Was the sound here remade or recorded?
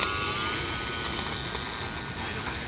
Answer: recorded